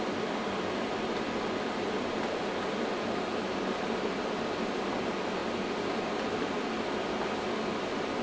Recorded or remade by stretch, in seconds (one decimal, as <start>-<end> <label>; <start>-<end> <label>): 0.0-5.4 remade; 5.4-6.0 recorded; 6.0-8.2 remade